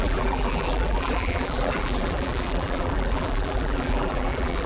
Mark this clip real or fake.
fake